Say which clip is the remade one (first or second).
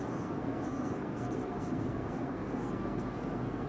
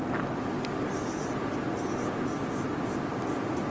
first